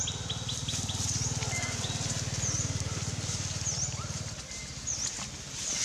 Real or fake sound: real